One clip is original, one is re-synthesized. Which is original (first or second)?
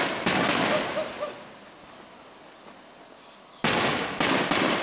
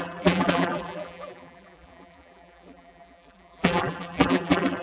first